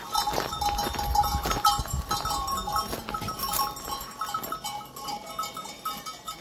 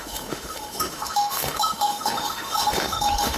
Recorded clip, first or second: first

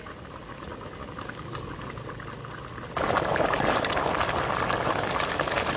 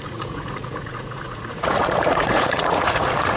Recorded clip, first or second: first